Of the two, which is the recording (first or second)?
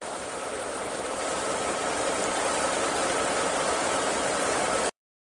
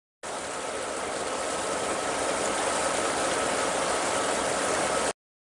second